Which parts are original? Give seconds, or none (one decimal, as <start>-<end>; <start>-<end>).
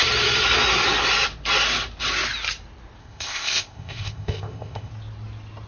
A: 0.0-3.0; 4.9-5.7